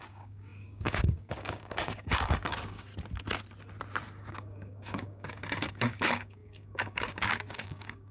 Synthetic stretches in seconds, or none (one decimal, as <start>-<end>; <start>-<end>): 0.0-2.9; 4.3-8.1